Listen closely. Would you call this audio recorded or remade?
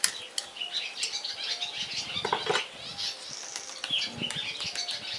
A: recorded